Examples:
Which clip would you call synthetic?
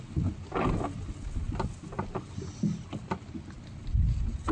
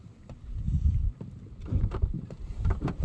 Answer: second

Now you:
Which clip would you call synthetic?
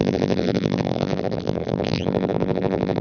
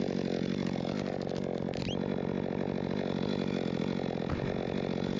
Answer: first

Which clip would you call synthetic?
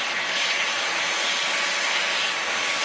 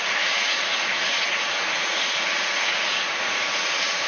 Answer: second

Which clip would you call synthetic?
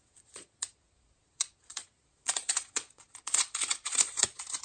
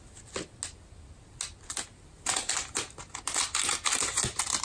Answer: first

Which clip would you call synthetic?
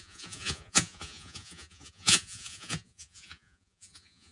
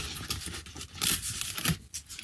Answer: first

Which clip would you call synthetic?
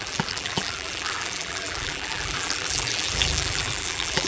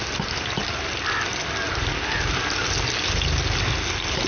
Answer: first